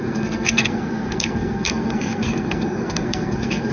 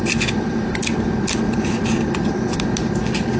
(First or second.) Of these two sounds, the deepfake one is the first